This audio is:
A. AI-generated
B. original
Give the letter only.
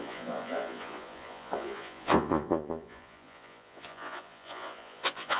A